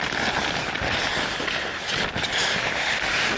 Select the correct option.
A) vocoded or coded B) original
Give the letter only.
B